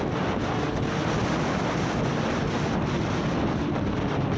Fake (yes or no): no